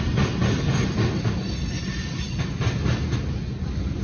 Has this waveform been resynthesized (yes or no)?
no